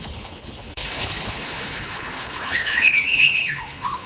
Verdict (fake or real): fake